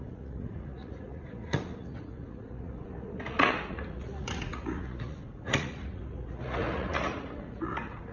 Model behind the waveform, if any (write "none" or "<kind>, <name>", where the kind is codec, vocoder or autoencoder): vocoder, Vocos